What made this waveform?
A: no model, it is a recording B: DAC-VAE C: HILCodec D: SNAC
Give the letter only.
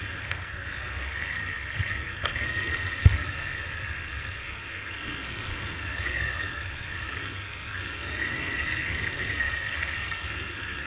D